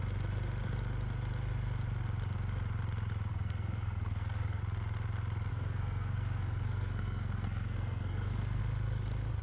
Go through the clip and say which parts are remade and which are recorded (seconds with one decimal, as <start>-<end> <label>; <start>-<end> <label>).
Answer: 0.0-3.3 recorded; 3.3-4.6 remade; 4.6-5.5 recorded; 5.5-8.6 remade; 8.6-9.4 recorded